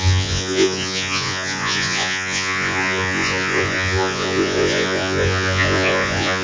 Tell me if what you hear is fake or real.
fake